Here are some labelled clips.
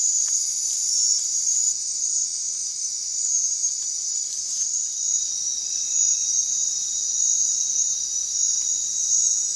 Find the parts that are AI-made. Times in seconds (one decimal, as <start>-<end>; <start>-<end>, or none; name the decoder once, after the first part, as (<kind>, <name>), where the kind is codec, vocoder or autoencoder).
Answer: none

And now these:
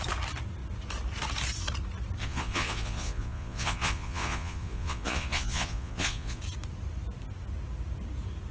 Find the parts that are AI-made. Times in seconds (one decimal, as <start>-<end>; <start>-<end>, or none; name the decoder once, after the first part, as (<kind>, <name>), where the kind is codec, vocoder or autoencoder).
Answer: 2.2-6.4 (vocoder, Vocos)

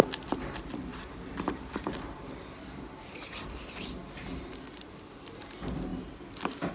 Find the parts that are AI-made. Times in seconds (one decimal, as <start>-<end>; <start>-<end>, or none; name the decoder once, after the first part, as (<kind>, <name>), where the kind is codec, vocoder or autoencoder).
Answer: none

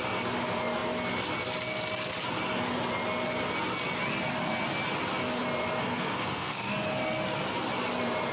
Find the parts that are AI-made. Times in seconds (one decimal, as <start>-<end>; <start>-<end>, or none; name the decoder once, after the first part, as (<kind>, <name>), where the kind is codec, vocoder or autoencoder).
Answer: 5.8-6.7 (codec, SNAC)